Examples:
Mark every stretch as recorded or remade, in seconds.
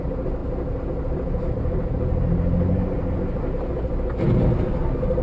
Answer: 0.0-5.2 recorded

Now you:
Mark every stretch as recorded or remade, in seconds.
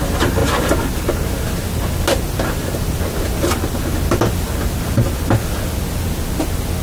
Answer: 0.0-6.8 recorded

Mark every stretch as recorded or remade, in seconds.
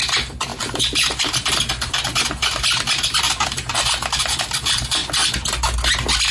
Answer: 0.0-0.5 recorded; 0.5-1.5 remade; 1.5-2.4 recorded; 2.4-4.6 remade; 4.6-6.3 recorded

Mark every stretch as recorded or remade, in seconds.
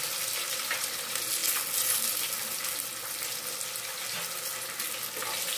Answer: 0.0-5.6 recorded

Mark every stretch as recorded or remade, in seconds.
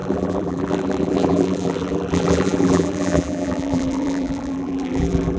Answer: 0.0-5.4 remade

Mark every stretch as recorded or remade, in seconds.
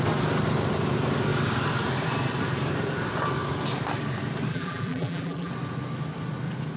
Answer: 0.0-4.5 recorded; 4.5-5.5 remade; 5.5-6.8 recorded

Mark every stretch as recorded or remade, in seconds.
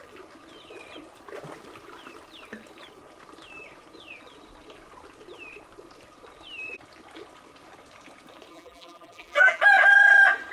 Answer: 0.0-8.5 recorded; 8.5-9.6 remade; 9.6-10.5 recorded